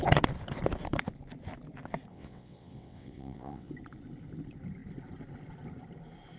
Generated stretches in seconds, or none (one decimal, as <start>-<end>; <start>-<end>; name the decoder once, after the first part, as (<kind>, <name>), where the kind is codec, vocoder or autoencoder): 2.1-3.7 (vocoder, WaveNeXt)